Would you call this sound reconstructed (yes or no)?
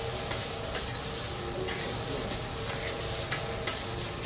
no